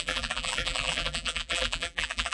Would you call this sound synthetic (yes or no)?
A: yes